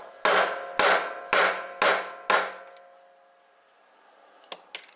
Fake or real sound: real